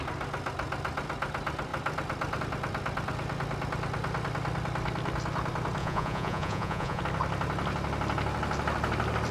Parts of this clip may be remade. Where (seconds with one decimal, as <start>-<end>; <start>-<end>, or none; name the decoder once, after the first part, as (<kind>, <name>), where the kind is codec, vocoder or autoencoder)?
5.8-7.0 (vocoder, Vocos)